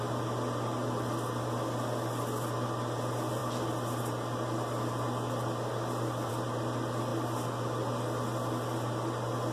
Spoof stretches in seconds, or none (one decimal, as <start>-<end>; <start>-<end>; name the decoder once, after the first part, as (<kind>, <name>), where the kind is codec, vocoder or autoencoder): none